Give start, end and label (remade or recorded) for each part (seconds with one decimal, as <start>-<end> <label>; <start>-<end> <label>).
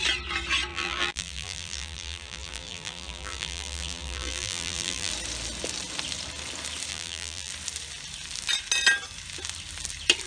0.0-0.7 recorded; 0.7-5.1 remade; 5.1-6.9 recorded; 6.9-7.5 remade; 7.5-10.3 recorded